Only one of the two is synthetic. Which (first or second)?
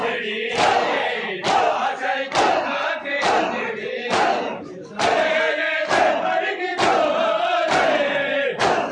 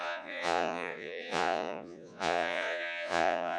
second